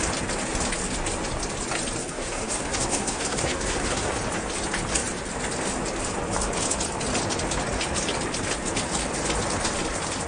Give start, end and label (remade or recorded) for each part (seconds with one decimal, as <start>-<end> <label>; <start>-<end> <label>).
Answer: 0.0-2.0 recorded; 2.0-4.1 remade; 4.1-10.3 recorded

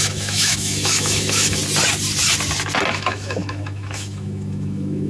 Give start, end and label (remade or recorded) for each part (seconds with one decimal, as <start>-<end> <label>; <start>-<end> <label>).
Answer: 0.0-1.6 remade; 1.6-2.9 recorded; 2.9-5.1 remade

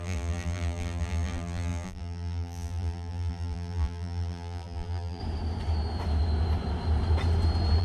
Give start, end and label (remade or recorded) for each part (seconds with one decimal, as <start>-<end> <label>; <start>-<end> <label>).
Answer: 0.0-5.2 remade; 5.2-7.8 recorded

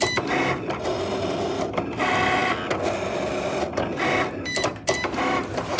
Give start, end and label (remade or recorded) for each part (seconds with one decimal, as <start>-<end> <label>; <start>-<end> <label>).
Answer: 0.0-2.4 remade; 2.4-3.5 recorded; 3.5-5.8 remade

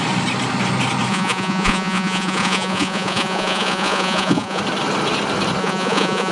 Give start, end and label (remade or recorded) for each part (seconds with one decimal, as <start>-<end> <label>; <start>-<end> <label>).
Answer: 0.0-1.1 recorded; 1.1-4.6 remade; 4.6-5.6 recorded; 5.6-6.3 remade

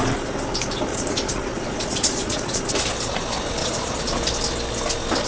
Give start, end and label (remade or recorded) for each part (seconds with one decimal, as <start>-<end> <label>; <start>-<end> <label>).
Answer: 0.0-0.9 recorded; 0.9-2.6 remade; 2.6-3.6 recorded; 3.6-4.2 remade; 4.2-5.3 recorded

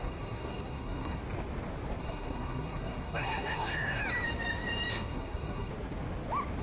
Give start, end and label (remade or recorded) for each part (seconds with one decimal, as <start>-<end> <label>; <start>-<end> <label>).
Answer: 0.0-1.2 remade; 1.2-2.0 recorded; 2.0-4.0 remade; 4.0-4.9 recorded; 4.9-5.7 remade; 5.7-6.6 recorded